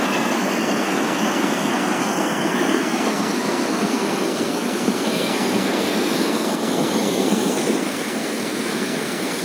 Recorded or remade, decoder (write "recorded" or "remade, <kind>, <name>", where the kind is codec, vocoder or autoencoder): remade, codec, SNAC